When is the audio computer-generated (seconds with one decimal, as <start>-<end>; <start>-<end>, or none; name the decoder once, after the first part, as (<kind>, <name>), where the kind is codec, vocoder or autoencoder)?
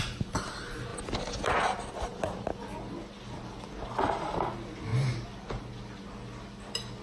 none